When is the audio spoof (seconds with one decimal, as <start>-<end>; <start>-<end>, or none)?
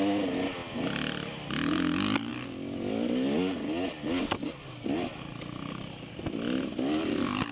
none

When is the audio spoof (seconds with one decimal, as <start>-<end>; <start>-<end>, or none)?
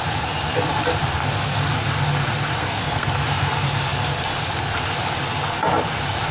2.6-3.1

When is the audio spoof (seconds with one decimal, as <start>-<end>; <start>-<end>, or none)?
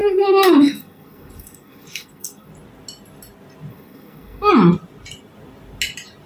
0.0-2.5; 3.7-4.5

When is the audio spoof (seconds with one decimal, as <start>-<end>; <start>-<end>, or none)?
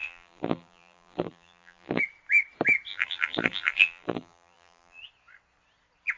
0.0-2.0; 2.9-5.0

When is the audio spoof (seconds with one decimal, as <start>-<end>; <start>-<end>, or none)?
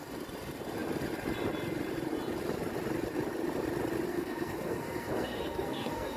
4.1-6.2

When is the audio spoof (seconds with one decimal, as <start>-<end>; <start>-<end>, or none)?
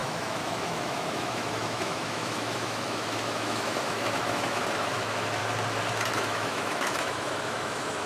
0.0-5.4; 6.1-8.1